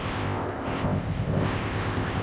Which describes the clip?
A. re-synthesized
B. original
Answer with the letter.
A